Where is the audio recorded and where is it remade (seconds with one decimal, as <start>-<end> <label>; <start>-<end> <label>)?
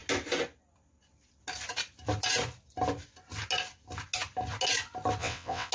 0.0-5.2 recorded; 5.2-5.7 remade